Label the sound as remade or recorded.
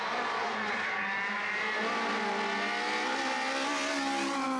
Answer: recorded